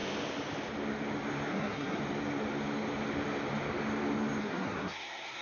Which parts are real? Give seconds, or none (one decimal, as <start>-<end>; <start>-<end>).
0.0-1.5; 2.0-4.4